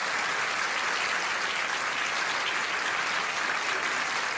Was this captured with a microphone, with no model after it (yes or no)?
yes